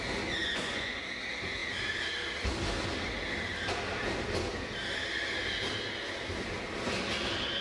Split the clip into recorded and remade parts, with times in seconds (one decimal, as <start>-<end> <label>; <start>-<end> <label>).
0.0-0.4 recorded; 0.4-0.9 remade; 0.9-7.6 recorded